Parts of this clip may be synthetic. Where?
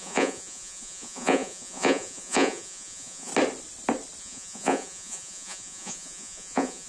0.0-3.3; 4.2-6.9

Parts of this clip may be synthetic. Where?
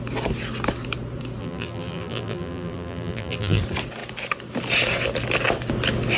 1.4-3.6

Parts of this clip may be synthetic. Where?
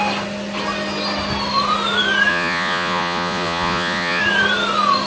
2.3-4.2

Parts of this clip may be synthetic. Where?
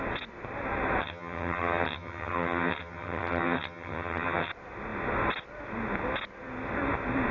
1.0-4.5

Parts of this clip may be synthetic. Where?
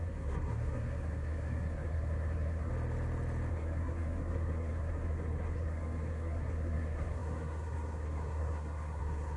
0.0-2.7; 3.5-9.4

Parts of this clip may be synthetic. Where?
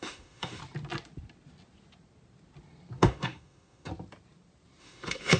0.0-0.6; 3.0-3.9; 4.8-5.4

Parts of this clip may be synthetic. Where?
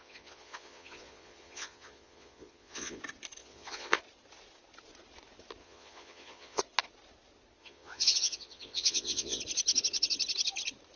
0.0-3.0; 3.4-4.0; 5.6-6.6; 7.6-9.4